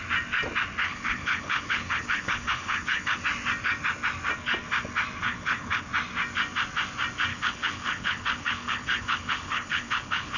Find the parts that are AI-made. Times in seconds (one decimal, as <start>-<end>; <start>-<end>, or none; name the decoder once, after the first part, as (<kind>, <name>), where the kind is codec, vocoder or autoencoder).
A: 0.8-3.2 (codec, HILCodec); 5.2-5.9; 7.3-10.4